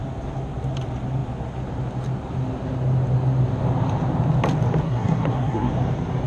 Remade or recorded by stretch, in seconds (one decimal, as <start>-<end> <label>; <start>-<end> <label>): 0.0-4.8 recorded; 4.8-5.7 remade; 5.7-6.3 recorded